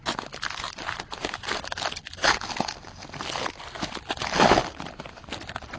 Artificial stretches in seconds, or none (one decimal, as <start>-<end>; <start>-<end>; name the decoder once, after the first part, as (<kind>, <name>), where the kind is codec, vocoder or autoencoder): none

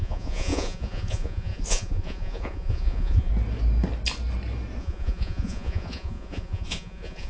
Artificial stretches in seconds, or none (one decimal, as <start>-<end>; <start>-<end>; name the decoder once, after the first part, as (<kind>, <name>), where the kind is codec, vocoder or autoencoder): 0.0-3.3 (vocoder, Vocos); 4.8-7.3

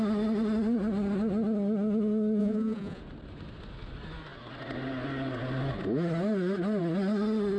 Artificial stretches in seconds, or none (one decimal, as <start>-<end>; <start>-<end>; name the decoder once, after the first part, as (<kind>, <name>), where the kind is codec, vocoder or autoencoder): 2.4-3.0 (vocoder, Vocos)

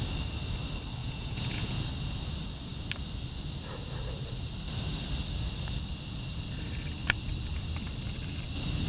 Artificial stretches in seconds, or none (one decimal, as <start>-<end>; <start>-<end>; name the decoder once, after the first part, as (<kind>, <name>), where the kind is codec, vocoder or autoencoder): 1.0-1.8 (vocoder, Vocos)

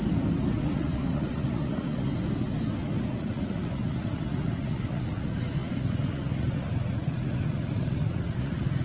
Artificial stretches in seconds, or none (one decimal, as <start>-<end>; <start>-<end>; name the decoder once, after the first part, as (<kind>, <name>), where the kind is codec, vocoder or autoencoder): 0.5-2.1 (vocoder, Vocos); 3.0-8.8